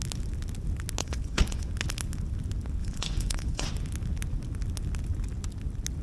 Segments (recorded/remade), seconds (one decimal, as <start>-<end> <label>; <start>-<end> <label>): 0.0-1.0 recorded; 1.0-1.7 remade; 1.7-2.8 recorded; 2.8-3.7 remade; 3.7-6.0 recorded